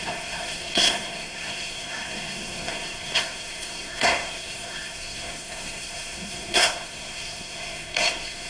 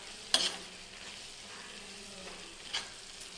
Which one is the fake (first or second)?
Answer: first